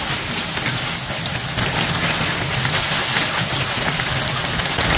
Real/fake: real